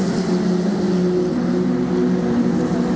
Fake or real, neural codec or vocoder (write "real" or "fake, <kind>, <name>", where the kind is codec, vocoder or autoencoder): real